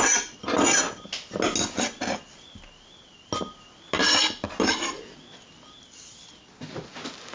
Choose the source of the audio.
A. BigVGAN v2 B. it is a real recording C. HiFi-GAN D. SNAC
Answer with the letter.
B